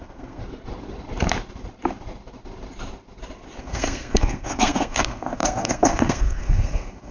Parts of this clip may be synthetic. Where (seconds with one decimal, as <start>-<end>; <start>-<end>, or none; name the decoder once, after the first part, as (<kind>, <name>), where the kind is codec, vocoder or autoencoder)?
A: 0.0-0.4 (codec, SNAC); 3.6-7.1

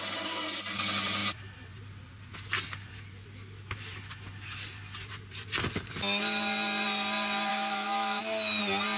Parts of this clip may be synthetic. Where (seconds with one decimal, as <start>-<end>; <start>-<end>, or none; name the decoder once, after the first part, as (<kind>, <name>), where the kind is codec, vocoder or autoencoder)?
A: 7.5-8.2 (autoencoder, DAC-VAE)

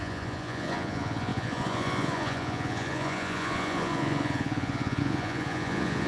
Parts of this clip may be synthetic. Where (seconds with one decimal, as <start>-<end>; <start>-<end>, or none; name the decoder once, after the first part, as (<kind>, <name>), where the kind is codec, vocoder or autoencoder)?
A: 0.0-6.1 (vocoder, Vocos)

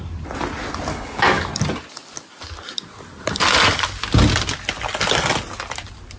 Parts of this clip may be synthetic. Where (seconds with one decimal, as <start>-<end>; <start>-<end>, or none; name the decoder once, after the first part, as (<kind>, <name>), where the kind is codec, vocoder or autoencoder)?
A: 0.9-1.5 (codec, DAC)

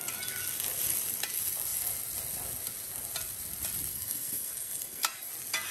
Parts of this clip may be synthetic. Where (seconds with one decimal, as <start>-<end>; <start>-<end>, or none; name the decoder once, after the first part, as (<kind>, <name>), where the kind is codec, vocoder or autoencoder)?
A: 3.9-5.3 (codec, SNAC)